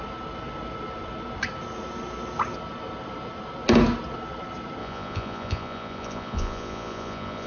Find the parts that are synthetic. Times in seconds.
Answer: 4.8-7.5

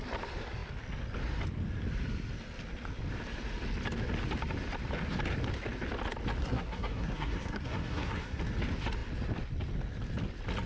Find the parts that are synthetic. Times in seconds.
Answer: 6.4-8.4

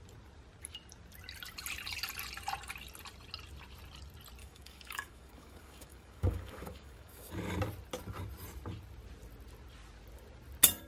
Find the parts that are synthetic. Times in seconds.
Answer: 4.4-7.3

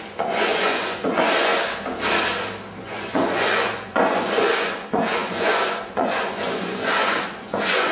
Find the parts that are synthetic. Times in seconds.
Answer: 0.0-1.5; 2.8-7.9

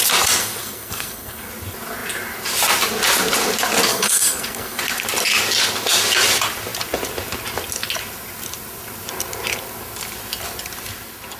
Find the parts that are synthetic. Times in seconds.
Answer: 0.4-1.5; 3.9-4.8